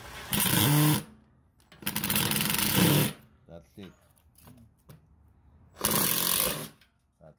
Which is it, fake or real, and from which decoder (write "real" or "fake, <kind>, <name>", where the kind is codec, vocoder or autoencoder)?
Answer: real